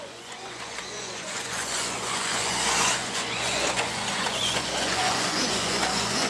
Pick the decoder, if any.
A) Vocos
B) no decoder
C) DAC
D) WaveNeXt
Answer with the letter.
A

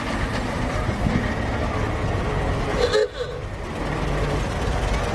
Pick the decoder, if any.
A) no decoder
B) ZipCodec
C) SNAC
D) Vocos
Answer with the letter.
A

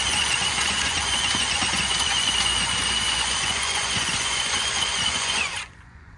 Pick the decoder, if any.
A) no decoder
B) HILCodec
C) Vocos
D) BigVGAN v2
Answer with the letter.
C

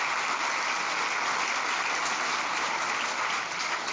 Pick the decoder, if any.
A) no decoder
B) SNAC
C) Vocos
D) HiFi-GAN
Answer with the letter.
A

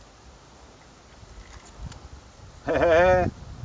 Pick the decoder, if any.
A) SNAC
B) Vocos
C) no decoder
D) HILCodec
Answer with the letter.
C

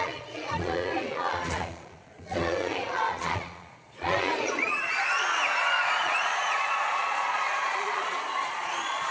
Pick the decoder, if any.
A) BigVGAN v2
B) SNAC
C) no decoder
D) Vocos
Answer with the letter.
D